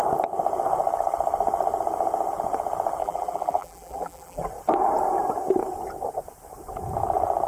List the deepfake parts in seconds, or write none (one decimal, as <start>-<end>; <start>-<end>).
3.0-4.4

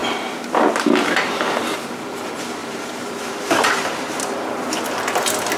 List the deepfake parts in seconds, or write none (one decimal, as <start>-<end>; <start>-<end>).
2.6-4.8

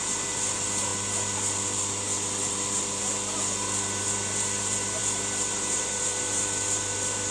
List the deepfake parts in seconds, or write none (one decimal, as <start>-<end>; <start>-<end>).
0.0-7.3

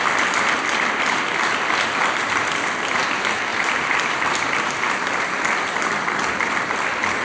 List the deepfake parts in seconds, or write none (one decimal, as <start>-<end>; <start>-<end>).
3.5-6.7

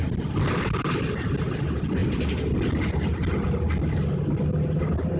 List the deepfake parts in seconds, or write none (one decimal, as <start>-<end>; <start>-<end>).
2.0-3.7